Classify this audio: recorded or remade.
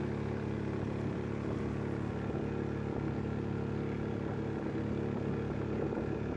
recorded